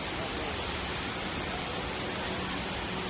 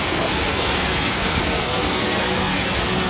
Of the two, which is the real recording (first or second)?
first